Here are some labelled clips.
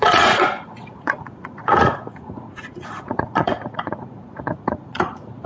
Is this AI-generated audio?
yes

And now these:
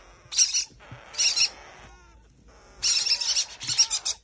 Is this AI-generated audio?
no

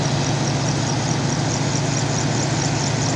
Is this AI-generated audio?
no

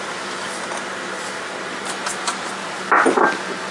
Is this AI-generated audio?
no